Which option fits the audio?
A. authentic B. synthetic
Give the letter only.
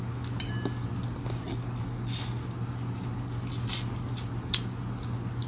A